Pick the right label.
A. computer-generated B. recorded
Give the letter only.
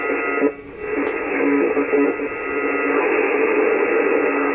B